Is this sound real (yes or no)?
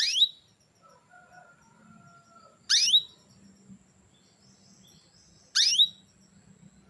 yes